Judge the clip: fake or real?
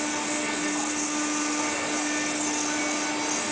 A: real